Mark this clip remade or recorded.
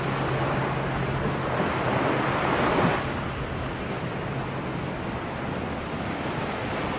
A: recorded